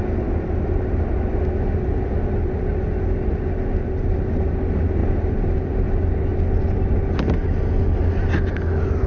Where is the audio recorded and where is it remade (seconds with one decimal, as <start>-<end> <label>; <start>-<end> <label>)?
0.0-9.1 recorded